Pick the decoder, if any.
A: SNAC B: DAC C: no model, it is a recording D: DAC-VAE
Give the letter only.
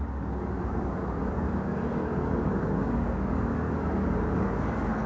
B